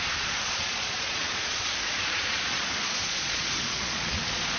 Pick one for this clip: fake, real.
fake